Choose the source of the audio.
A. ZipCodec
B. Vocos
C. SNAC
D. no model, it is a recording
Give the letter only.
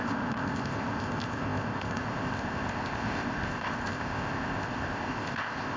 A